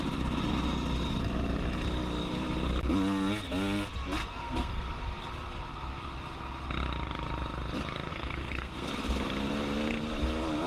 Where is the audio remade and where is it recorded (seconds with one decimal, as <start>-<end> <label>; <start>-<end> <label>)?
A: 0.0-4.2 recorded; 4.2-4.8 remade; 4.8-8.1 recorded; 8.1-8.9 remade; 8.9-10.7 recorded